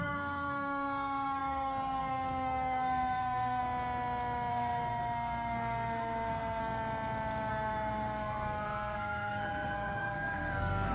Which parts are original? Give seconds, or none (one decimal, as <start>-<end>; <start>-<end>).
3.6-4.5; 6.6-7.5